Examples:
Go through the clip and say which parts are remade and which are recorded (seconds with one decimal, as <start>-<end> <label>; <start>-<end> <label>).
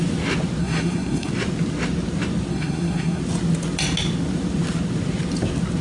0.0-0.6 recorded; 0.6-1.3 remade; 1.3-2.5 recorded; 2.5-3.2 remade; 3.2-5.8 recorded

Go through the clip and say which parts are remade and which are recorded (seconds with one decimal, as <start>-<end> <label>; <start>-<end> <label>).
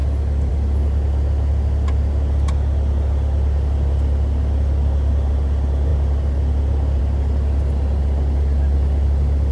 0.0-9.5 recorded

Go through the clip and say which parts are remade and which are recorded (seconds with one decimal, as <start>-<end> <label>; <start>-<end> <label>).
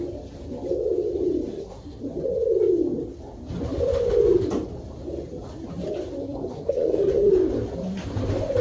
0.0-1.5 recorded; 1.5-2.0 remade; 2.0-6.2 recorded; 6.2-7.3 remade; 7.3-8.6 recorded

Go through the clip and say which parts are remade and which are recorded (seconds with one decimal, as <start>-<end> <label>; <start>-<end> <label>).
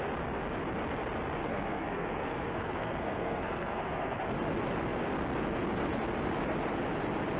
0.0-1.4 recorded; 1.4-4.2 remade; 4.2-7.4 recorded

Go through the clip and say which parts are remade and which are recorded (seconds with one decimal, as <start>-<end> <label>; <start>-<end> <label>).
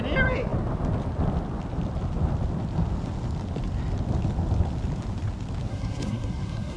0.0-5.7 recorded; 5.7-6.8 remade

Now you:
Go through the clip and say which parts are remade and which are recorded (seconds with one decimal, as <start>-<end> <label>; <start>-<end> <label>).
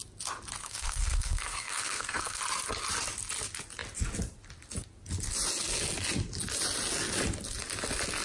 0.0-0.6 recorded; 0.6-2.4 remade; 2.4-8.2 recorded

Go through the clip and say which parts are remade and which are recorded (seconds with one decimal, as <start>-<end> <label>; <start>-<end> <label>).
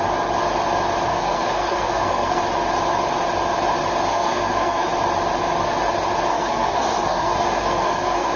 0.0-1.1 recorded; 1.1-2.4 remade; 2.4-4.1 recorded; 4.1-4.9 remade; 4.9-6.3 recorded; 6.3-8.4 remade